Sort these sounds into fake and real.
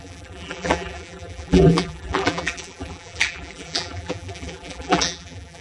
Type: fake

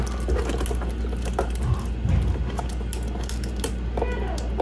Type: real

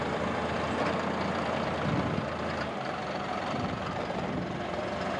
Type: fake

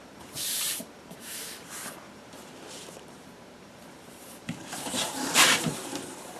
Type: fake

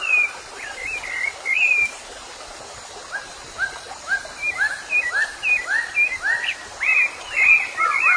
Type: fake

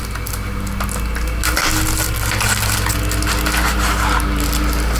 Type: real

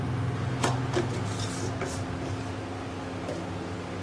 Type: real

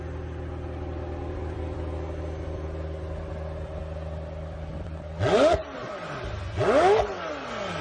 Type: real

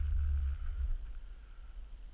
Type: real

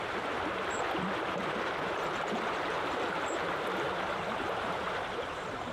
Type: fake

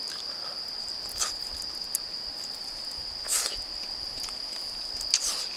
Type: real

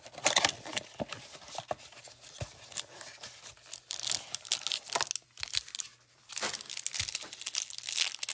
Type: real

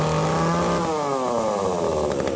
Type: real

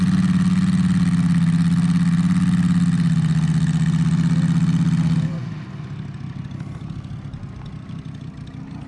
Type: real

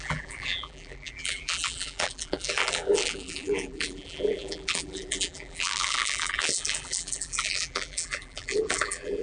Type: fake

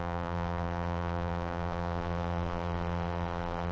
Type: fake